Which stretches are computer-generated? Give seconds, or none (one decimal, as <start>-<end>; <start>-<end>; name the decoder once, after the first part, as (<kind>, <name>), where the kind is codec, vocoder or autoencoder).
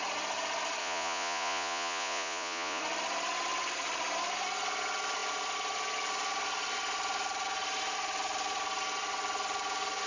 0.8-2.8 (vocoder, Vocos)